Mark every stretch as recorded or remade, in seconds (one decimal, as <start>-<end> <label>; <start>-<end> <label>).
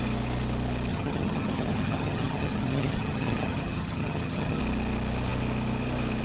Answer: 0.0-0.9 recorded; 0.9-4.6 remade; 4.6-6.2 recorded